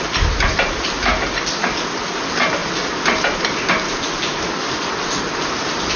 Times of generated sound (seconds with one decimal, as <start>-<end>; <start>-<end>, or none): none